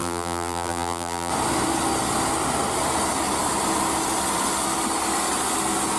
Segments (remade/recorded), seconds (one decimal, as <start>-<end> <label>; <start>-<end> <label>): 0.0-1.3 remade; 1.3-6.0 recorded